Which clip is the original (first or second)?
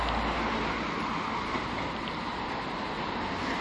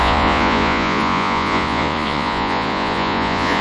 first